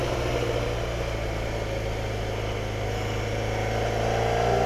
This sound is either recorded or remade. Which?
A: recorded